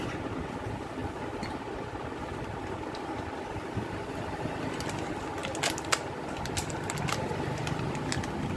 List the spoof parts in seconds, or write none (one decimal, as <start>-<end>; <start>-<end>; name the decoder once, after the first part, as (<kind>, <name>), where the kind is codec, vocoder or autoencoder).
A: none